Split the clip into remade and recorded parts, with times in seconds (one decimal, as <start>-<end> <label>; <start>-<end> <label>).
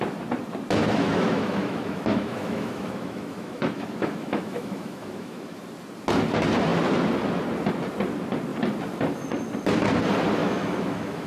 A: 0.0-0.8 recorded; 0.8-5.6 remade; 5.6-10.4 recorded; 10.4-11.3 remade